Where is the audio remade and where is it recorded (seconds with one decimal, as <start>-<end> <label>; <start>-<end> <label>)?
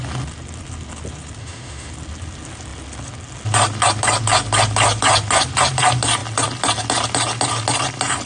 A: 0.0-1.4 recorded; 1.4-1.9 remade; 1.9-8.3 recorded